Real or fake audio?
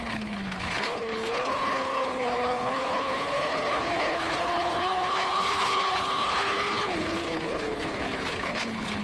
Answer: fake